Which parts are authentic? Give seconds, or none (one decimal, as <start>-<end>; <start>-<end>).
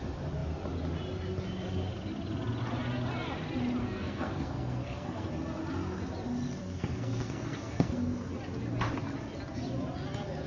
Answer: 0.0-3.8; 5.3-6.6; 8.3-10.5